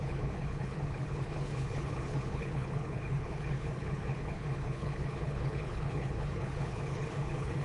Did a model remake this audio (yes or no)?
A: yes